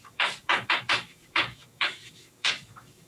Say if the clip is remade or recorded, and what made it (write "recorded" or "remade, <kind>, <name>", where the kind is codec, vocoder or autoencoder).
remade, codec, DAC